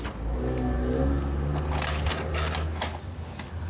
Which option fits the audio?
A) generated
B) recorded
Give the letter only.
B